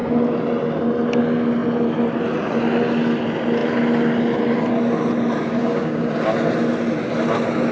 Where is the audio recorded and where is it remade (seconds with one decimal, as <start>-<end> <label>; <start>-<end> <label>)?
0.0-5.6 recorded; 5.6-6.1 remade; 6.1-7.7 recorded